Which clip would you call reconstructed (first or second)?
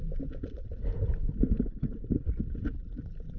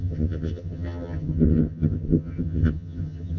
second